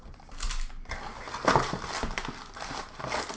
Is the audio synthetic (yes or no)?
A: no